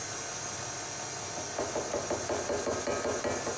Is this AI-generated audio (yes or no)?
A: no